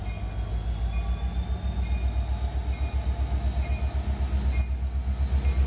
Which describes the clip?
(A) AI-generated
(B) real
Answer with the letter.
B